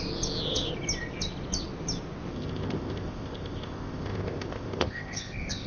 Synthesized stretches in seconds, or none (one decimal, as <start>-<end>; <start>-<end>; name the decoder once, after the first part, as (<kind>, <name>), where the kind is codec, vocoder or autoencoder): 2.3-5.7 (codec, ZipCodec)